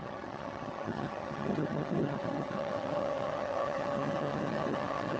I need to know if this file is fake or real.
fake